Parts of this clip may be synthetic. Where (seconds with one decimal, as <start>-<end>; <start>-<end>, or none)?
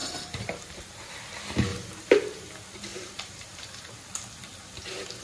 0.0-1.1; 1.7-2.5; 2.9-3.9